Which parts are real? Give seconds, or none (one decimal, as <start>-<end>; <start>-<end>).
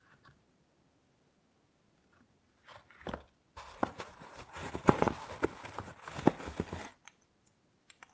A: 0.0-4.1; 5.1-8.1